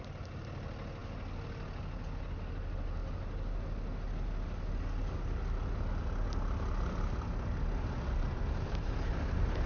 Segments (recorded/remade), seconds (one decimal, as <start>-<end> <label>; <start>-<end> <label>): 0.0-9.7 recorded